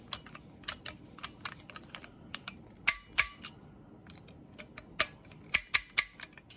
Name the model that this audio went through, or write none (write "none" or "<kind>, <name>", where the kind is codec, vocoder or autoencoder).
none